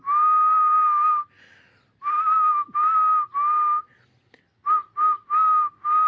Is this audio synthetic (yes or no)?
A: no